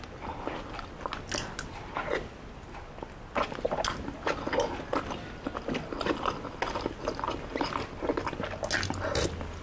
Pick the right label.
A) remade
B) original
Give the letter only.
B